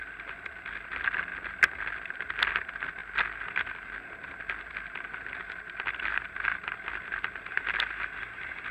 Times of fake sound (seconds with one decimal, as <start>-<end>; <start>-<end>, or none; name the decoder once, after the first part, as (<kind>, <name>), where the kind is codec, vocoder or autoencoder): none